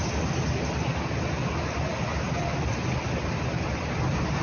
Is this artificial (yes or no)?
no